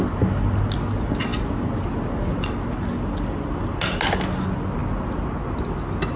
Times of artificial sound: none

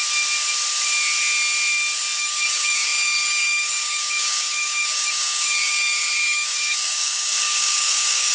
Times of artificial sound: 2.2-8.3

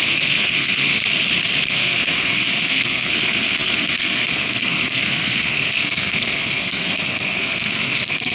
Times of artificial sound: 0.0-1.0; 1.7-8.3

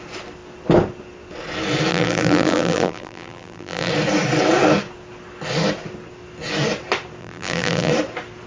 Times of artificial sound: 1.9-3.9; 7.2-7.9

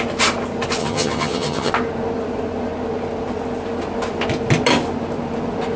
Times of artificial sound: 0.8-1.7

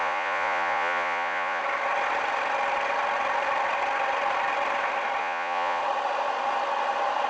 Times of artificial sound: 0.0-1.6; 5.2-5.8